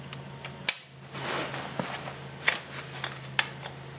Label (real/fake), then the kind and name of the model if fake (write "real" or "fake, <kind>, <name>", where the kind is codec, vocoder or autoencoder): real